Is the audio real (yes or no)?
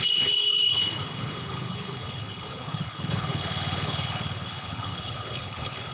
no